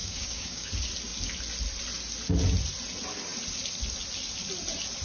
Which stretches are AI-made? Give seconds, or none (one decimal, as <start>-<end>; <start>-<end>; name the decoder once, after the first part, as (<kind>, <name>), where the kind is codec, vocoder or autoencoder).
0.0-0.7 (codec, DAC)